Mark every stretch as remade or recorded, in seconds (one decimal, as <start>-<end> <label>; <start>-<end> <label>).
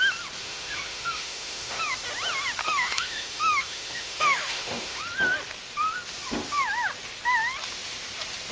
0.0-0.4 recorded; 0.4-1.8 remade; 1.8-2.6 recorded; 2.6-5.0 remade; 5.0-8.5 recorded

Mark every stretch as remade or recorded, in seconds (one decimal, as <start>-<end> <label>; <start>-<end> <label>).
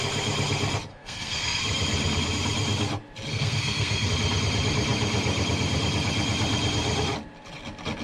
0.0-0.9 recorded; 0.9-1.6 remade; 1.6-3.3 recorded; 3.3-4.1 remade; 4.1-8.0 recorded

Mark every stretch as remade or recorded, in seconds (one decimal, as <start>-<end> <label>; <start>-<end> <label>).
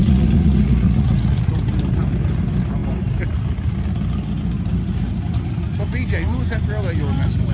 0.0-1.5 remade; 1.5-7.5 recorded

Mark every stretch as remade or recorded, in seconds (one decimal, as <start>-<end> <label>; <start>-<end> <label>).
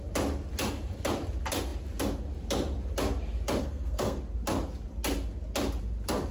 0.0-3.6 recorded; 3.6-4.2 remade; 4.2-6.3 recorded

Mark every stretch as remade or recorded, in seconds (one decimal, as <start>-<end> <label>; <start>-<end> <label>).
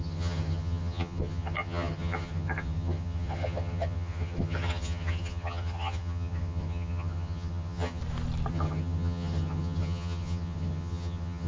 0.0-8.0 remade; 8.0-8.5 recorded; 8.5-11.5 remade